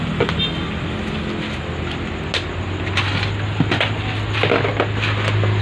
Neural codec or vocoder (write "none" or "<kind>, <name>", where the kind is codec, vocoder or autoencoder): none